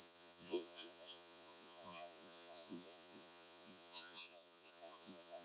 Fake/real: fake